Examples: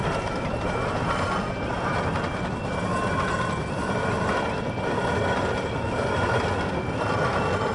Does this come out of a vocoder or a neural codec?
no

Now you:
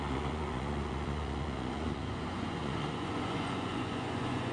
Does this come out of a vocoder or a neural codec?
yes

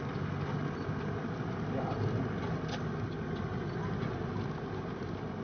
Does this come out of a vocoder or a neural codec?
no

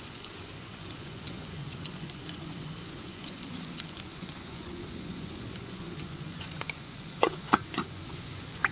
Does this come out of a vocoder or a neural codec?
yes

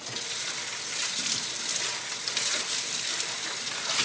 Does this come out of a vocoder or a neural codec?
no